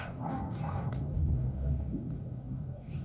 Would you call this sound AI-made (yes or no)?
yes